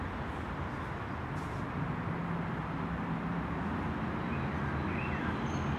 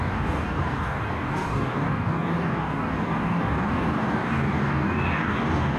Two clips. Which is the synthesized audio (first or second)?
second